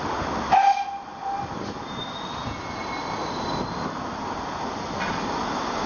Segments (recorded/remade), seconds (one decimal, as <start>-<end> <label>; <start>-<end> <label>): 0.0-5.9 recorded

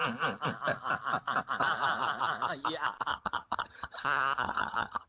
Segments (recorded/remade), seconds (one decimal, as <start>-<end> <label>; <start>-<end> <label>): 0.0-3.1 recorded; 3.1-5.1 remade

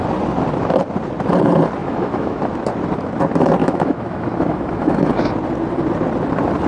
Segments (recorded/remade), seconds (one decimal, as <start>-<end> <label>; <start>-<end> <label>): 0.0-1.8 recorded; 1.8-2.4 remade; 2.4-3.6 recorded; 3.6-5.1 remade; 5.1-6.7 recorded

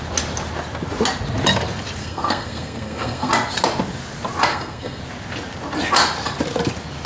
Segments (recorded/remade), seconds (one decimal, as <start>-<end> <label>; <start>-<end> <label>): 0.0-2.0 recorded; 2.0-3.3 remade; 3.3-4.5 recorded; 4.5-5.0 remade; 5.0-7.1 recorded

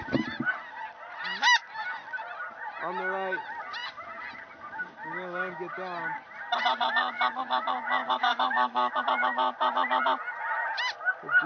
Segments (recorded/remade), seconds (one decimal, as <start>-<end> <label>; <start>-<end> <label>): 0.0-8.0 recorded; 8.0-8.9 remade; 8.9-11.5 recorded

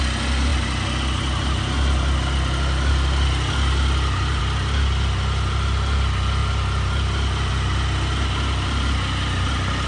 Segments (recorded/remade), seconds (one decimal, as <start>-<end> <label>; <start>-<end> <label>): 0.0-9.9 recorded